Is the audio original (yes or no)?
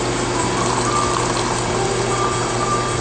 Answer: yes